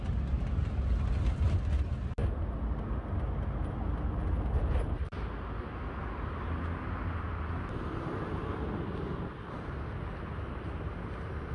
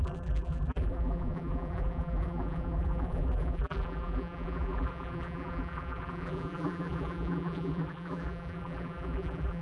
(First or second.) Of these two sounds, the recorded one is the first